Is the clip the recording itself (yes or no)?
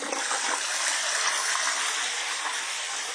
yes